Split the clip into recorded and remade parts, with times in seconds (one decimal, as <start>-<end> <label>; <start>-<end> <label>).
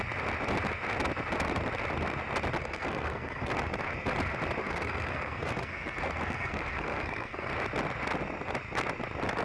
0.0-2.6 recorded; 2.6-3.5 remade; 3.5-4.6 recorded; 4.6-7.5 remade; 7.5-9.4 recorded